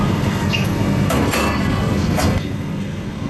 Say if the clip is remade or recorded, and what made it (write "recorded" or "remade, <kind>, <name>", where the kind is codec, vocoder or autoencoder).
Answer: remade, codec, SNAC